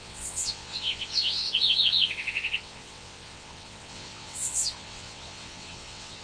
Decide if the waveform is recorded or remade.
remade